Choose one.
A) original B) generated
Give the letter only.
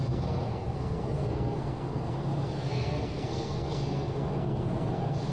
B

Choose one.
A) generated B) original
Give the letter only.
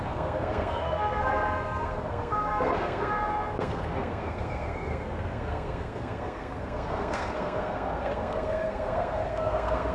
A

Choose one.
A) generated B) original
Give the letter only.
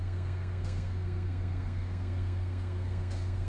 A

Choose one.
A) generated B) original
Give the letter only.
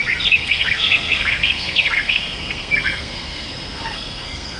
A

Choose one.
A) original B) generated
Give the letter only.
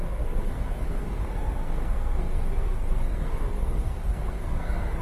B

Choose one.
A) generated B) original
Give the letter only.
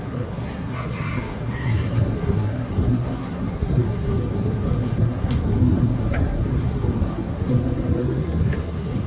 A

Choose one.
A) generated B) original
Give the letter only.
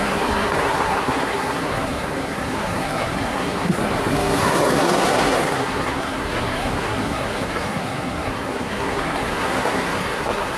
A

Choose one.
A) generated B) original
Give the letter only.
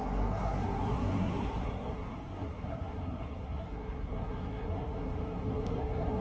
A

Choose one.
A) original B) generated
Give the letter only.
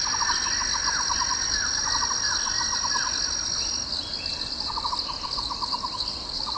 A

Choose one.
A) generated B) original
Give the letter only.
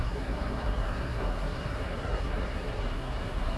A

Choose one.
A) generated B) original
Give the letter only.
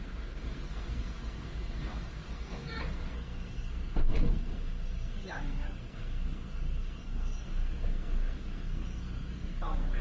A